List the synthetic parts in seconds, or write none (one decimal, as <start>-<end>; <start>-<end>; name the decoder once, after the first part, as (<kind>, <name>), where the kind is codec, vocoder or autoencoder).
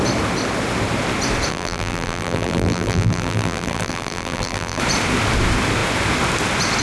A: 1.5-4.8 (vocoder, BigVGAN v2)